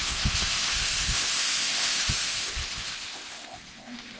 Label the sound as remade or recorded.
remade